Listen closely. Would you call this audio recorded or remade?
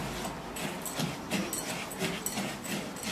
recorded